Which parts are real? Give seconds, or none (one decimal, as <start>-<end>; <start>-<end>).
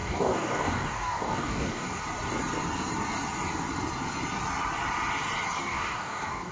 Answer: 2.0-5.6